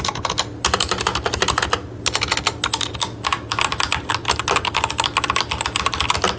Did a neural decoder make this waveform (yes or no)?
no